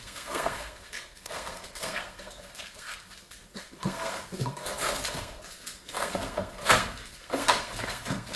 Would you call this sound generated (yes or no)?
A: yes